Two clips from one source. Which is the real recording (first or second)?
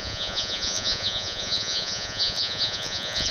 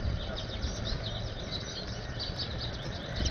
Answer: second